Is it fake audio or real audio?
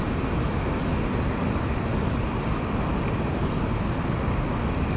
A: real